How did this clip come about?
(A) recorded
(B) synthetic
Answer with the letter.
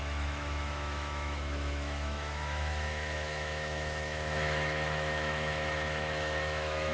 B